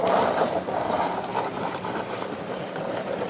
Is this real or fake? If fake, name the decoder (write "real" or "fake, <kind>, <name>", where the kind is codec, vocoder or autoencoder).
fake, vocoder, BigVGAN v2